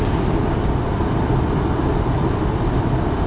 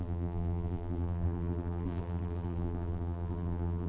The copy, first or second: second